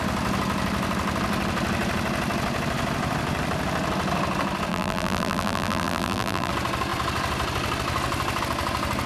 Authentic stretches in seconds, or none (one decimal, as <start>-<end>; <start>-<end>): 0.0-4.7; 6.5-9.1